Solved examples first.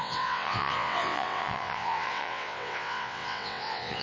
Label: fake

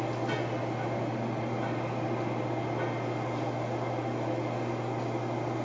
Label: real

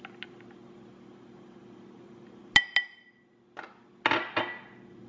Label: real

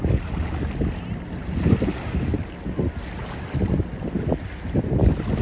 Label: real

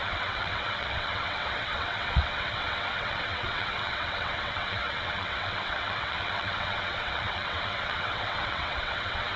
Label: fake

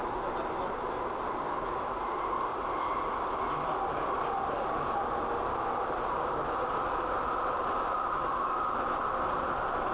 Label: real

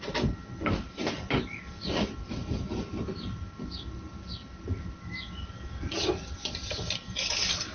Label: real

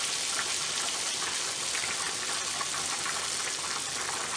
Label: real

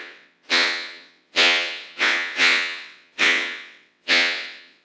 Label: fake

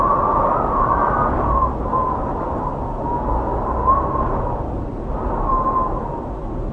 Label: real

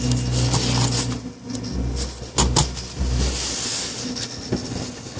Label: real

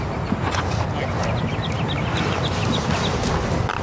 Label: real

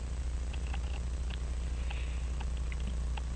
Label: real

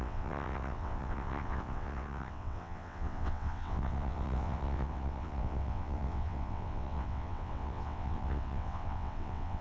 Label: fake